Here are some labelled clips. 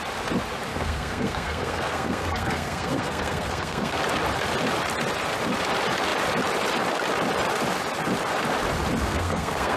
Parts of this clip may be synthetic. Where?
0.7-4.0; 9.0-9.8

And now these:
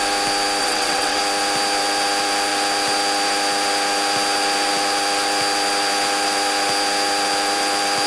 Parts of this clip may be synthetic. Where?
0.6-1.2

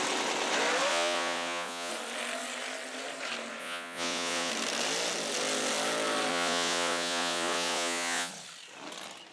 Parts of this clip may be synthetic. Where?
0.9-1.9; 3.6-4.5; 6.3-8.3

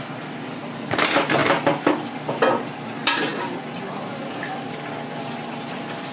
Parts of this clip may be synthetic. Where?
none

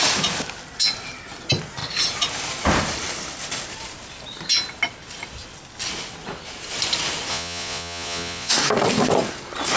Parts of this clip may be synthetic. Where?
7.3-8.5

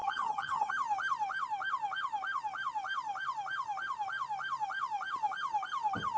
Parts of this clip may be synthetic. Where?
0.0-0.7